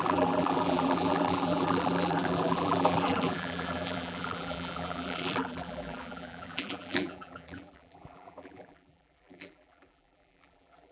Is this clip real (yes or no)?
no